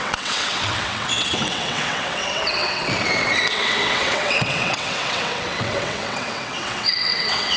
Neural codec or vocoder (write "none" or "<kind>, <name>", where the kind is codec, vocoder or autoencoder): vocoder, WaveNeXt